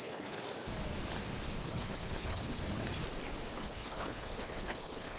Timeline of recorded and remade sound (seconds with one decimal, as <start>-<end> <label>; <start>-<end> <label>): 0.0-0.4 remade; 0.4-1.6 recorded; 1.6-2.6 remade; 2.6-3.6 recorded; 3.6-5.2 remade